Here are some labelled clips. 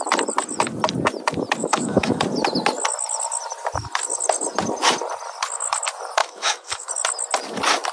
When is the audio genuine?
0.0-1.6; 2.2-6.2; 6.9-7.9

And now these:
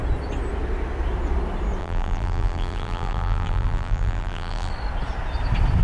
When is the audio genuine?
0.0-1.8; 4.7-5.8

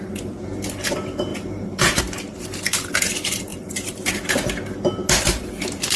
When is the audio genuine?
0.0-1.3; 2.0-3.5; 4.1-6.0

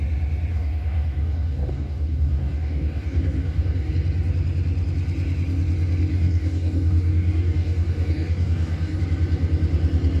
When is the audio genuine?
0.0-0.5; 3.9-6.1; 9.0-10.2